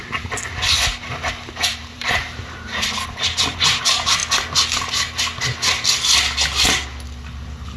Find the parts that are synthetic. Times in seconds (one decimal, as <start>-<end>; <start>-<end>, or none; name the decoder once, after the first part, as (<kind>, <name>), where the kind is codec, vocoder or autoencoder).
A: 1.7-2.9 (vocoder, BigVGAN v2)